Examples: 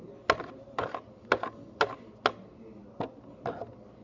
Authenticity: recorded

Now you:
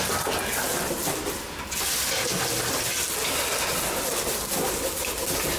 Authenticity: recorded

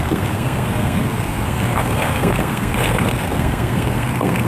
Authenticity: remade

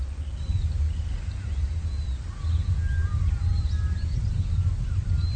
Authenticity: recorded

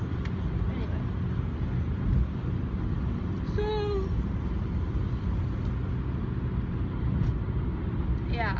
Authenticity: recorded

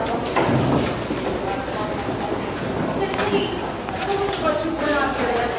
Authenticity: recorded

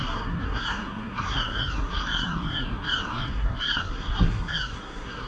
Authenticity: remade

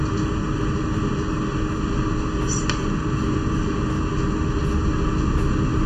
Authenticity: recorded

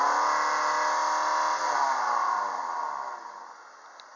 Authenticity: recorded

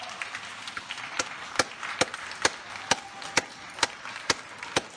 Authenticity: recorded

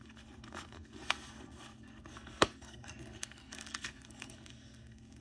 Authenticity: remade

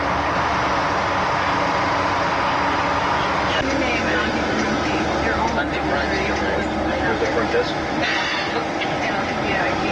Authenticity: recorded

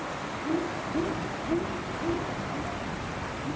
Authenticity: recorded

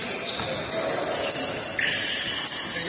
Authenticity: recorded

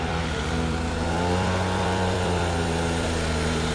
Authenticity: remade